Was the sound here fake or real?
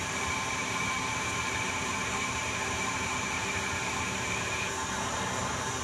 fake